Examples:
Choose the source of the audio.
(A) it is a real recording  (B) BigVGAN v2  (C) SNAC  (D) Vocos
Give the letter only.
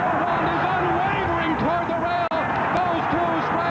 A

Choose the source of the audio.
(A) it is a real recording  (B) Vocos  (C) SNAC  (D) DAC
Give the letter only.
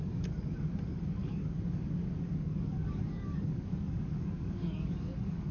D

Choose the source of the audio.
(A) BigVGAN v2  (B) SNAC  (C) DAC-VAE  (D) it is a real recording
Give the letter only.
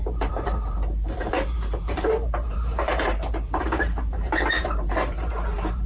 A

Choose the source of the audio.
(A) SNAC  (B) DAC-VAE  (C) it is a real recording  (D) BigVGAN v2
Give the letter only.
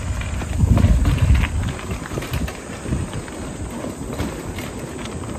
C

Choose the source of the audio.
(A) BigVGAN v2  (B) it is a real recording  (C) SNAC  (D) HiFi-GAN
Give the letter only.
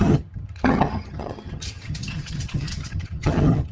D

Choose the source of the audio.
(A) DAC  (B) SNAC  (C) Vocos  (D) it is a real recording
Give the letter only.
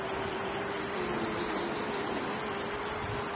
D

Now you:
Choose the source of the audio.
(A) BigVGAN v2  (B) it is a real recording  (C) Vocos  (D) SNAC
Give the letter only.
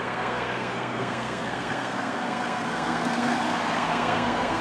D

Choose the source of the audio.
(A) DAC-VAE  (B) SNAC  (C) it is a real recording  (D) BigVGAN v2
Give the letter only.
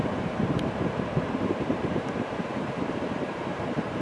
D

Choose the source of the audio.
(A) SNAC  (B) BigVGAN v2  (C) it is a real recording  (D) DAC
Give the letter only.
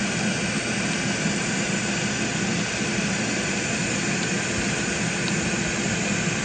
C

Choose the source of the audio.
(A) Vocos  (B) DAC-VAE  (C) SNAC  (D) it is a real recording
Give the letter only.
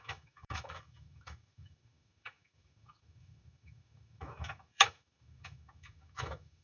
B